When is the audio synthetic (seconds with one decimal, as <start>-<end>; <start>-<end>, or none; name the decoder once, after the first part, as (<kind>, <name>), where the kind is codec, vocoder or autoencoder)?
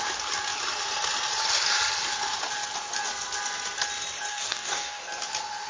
4.3-5.0 (codec, DAC)